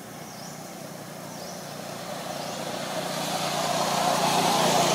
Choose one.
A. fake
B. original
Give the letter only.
B